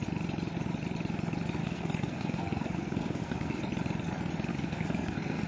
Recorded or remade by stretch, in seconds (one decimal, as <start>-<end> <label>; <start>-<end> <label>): 0.0-1.6 recorded; 1.6-3.6 remade; 3.6-4.5 recorded; 4.5-5.5 remade